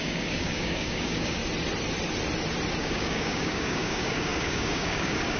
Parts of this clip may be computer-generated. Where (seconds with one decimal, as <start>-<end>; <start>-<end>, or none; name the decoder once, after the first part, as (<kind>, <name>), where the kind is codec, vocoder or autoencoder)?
0.0-1.4 (codec, DAC); 2.8-5.4